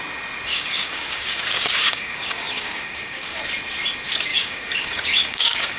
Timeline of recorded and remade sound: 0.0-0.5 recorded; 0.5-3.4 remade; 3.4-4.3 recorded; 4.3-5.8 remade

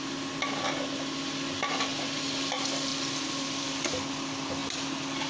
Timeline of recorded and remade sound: 0.0-5.3 recorded

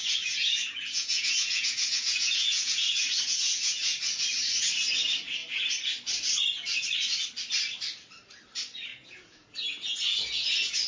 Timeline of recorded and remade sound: 0.0-4.0 remade; 4.0-8.9 recorded; 8.9-10.9 remade

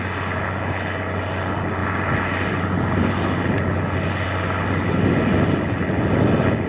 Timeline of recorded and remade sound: 0.0-6.7 recorded

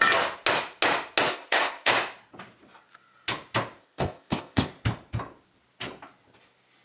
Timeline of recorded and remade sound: 0.0-1.3 recorded; 1.3-1.9 remade; 1.9-3.8 recorded; 3.8-4.7 remade; 4.7-6.8 recorded

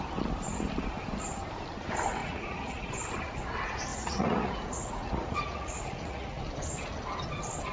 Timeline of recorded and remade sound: 0.0-2.2 recorded; 2.2-2.9 remade; 2.9-3.9 recorded; 3.9-6.4 remade; 6.4-7.7 recorded